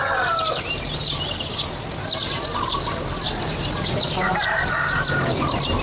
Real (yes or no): yes